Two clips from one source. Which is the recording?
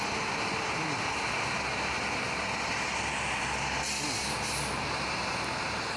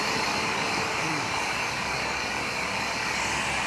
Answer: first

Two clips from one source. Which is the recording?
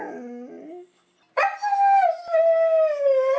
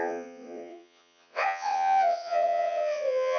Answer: first